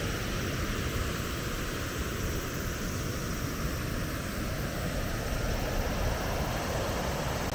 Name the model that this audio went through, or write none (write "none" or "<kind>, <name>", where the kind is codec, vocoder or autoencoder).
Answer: none